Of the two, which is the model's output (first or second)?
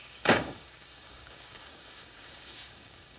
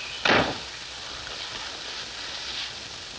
first